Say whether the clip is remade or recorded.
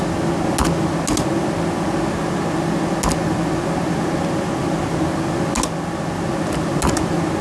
recorded